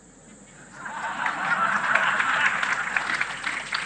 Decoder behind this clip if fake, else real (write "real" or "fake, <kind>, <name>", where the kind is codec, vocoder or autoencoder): real